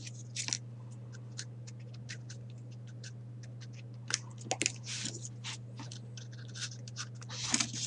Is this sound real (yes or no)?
yes